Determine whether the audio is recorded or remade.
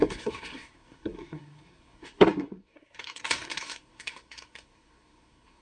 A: remade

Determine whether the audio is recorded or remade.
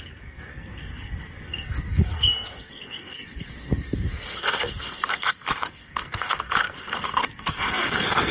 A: remade